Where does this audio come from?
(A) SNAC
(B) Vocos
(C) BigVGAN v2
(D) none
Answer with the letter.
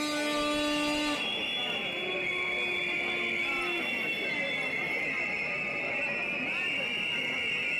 D